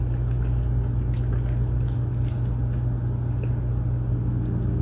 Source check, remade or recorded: recorded